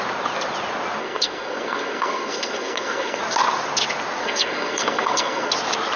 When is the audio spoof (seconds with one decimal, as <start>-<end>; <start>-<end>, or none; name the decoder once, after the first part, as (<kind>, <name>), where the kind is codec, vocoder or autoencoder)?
1.0-3.2 (codec, SNAC); 4.2-5.5